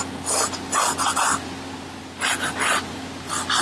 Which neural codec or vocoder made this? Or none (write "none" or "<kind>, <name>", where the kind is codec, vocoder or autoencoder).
none